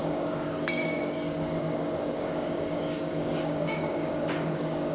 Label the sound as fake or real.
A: fake